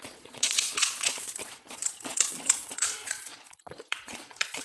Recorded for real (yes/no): no